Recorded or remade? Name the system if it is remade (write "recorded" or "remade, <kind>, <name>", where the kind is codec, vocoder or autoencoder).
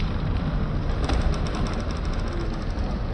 recorded